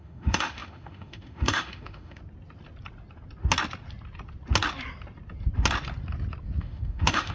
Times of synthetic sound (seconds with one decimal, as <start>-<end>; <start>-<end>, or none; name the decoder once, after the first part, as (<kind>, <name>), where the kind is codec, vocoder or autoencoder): 0.0-2.2 (autoencoder, DAC-VAE); 6.6-7.3